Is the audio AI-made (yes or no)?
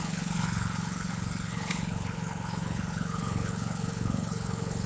yes